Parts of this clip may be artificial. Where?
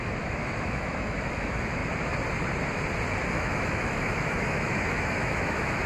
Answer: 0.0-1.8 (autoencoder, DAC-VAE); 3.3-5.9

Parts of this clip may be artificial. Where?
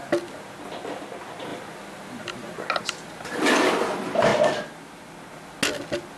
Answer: none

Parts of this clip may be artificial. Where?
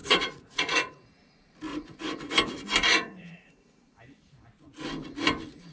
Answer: 0.0-0.9 (vocoder, Vocos); 1.7-2.3; 2.9-3.8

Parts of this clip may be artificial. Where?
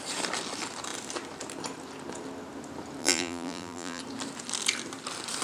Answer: 3.0-4.0 (vocoder, BigVGAN v2)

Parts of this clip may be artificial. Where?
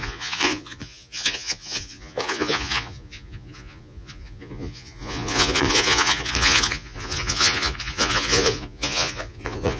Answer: 0.0-9.8 (vocoder, Vocos)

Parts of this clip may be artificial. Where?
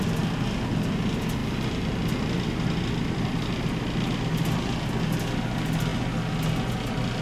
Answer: none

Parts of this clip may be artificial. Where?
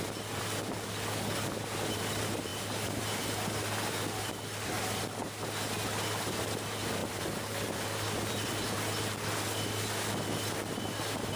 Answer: none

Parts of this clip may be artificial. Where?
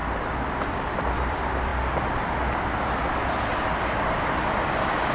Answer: none